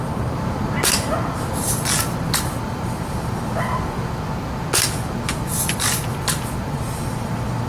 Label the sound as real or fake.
real